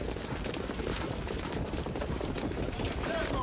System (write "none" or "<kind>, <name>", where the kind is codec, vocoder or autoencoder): vocoder, BigVGAN v2